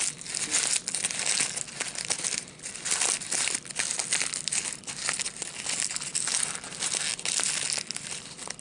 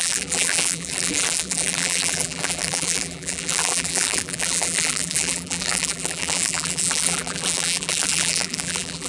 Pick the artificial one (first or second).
second